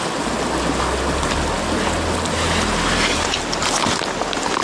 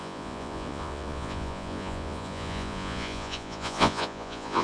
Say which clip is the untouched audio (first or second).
first